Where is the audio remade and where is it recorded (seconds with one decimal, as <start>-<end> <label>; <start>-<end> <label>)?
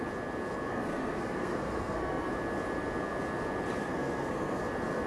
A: 0.0-0.7 recorded; 0.7-2.3 remade; 2.3-3.8 recorded; 3.8-4.6 remade; 4.6-5.1 recorded